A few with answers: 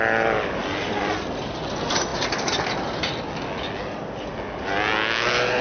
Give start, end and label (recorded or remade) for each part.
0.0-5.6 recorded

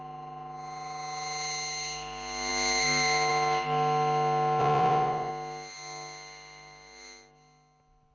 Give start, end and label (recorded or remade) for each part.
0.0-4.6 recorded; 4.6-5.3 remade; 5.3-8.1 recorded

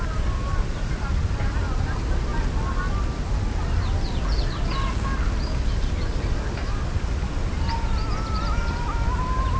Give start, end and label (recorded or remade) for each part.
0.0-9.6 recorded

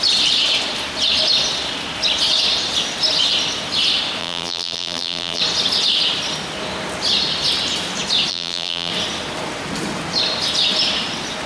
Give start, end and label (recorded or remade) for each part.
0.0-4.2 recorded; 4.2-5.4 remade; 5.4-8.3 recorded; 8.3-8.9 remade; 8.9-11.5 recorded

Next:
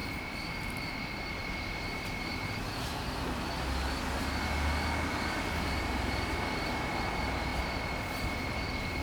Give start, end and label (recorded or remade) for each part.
0.0-2.9 remade; 2.9-5.5 recorded; 5.5-7.5 remade; 7.5-8.2 recorded; 8.2-9.0 remade